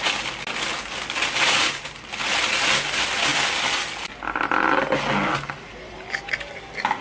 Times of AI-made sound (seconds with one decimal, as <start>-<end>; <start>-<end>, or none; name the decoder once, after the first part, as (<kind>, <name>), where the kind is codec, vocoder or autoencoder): none